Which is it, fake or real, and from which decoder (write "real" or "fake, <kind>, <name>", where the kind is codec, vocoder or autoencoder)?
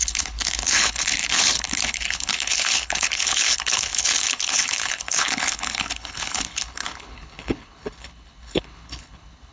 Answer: fake, codec, HILCodec